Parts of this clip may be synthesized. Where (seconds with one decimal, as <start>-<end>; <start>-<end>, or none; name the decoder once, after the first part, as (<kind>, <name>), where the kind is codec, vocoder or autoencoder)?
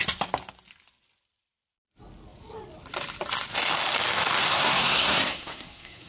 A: 4.4-6.1 (codec, SNAC)